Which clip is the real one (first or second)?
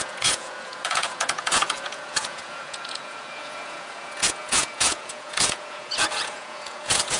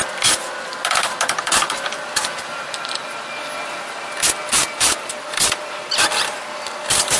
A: second